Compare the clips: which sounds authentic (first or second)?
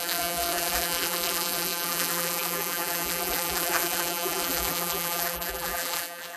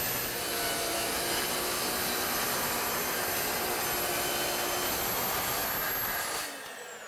second